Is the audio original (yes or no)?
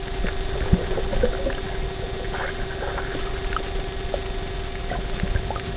yes